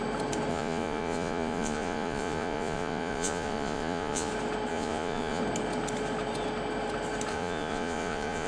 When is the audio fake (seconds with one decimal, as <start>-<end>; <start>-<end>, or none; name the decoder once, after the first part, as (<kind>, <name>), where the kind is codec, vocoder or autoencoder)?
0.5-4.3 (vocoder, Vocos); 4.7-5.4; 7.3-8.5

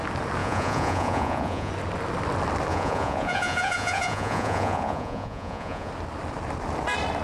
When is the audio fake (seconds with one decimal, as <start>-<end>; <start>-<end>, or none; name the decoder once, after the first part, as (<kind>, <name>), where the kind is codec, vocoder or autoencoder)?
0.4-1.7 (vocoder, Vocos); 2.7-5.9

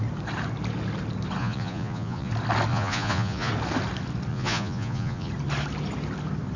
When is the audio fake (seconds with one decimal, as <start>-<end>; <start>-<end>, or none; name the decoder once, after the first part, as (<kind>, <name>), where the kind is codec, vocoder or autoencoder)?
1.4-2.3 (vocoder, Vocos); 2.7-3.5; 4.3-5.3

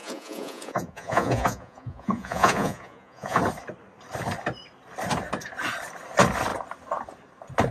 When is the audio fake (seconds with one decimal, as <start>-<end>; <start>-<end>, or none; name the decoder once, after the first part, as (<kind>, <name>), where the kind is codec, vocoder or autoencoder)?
0.0-3.4 (vocoder, Vocos)

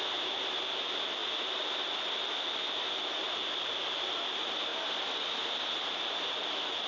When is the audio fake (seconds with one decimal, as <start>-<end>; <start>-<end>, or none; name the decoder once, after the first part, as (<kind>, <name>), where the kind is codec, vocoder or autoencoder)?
none

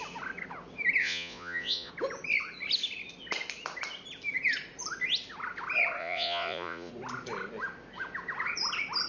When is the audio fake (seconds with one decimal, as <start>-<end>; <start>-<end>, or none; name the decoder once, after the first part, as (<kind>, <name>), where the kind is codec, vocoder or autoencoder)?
1.0-1.9 (vocoder, Vocos); 6.0-6.9